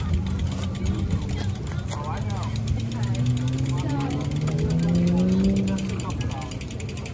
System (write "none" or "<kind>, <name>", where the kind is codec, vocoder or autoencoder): none